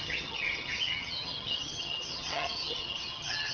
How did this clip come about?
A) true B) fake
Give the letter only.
B